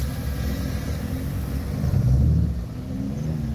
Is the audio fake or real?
real